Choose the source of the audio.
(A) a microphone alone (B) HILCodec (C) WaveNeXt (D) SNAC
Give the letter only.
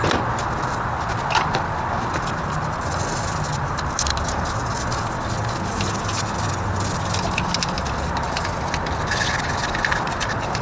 A